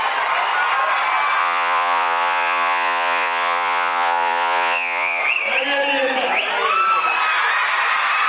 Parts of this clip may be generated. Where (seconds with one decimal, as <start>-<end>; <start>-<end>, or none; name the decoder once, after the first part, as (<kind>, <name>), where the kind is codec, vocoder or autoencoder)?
1.4-5.2 (vocoder, Vocos)